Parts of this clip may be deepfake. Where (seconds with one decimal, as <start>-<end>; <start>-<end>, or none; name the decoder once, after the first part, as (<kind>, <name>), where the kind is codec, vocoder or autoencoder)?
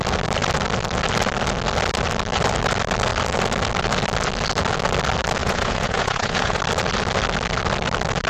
5.4-6.6 (vocoder, Vocos)